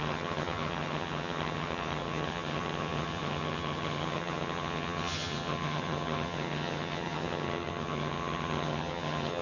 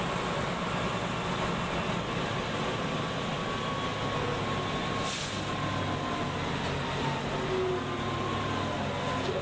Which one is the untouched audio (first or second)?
second